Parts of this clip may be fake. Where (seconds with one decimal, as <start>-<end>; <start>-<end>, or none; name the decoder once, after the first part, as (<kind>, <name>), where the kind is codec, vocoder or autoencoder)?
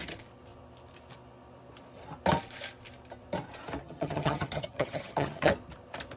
3.8-5.5 (vocoder, HiFi-GAN)